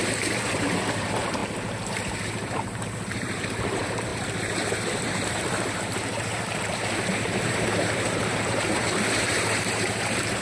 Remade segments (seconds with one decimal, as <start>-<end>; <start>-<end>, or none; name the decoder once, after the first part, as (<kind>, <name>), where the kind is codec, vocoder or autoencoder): 0.0-1.4 (vocoder, BigVGAN v2); 1.9-10.4